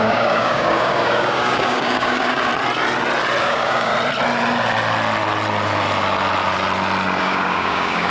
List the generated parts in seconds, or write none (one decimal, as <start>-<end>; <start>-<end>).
0.0-2.5; 3.4-3.9; 7.2-8.1